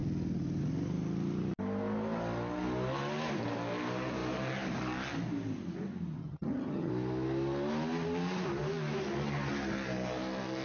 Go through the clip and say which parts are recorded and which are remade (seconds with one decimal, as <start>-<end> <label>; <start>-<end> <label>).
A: 0.0-6.2 recorded; 6.2-6.9 remade; 6.9-10.6 recorded